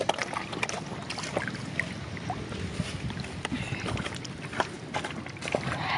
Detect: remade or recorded recorded